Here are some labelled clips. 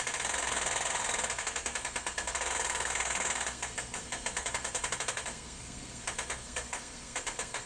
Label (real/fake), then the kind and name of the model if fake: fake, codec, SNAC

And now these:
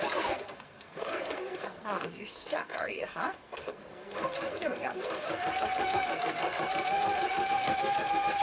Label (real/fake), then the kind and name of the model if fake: fake, codec, SNAC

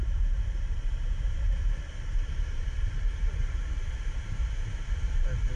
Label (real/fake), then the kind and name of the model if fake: fake, vocoder, BigVGAN v2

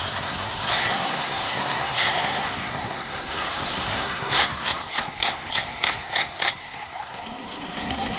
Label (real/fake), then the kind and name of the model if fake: fake, codec, SNAC